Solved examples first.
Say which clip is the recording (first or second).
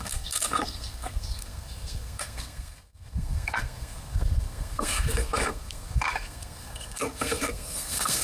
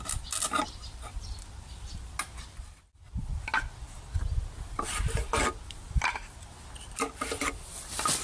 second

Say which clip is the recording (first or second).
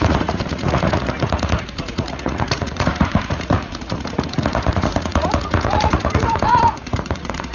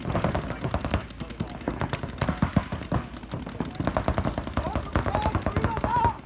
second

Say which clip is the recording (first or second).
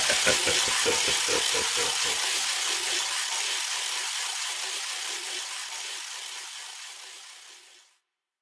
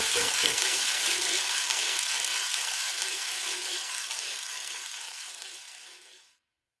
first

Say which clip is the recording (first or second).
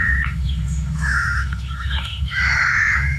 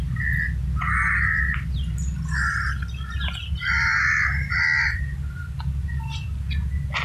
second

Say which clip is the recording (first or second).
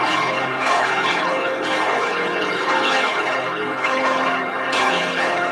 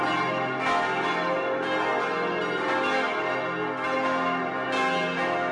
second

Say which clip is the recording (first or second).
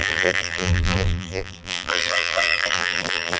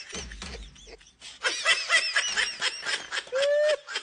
second